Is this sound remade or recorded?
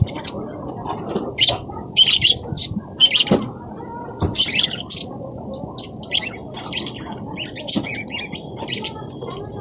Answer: recorded